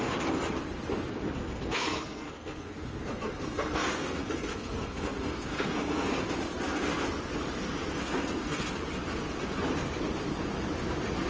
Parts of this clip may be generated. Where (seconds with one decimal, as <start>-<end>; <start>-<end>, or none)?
1.4-6.2; 7.9-8.7